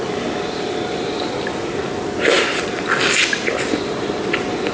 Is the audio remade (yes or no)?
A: no